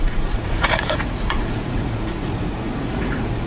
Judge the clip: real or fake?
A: fake